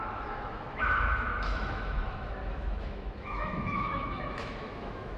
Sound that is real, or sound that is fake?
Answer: fake